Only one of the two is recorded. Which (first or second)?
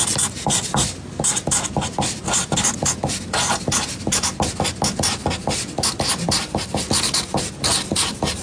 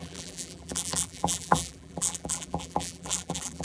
first